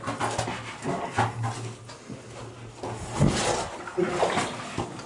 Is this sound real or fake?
real